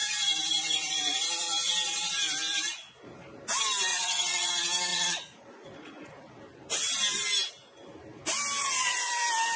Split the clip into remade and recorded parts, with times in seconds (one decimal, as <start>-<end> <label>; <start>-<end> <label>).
0.0-3.9 recorded; 3.9-4.5 remade; 4.5-4.9 recorded; 4.9-6.3 remade; 6.3-8.6 recorded; 8.6-9.1 remade; 9.1-9.6 recorded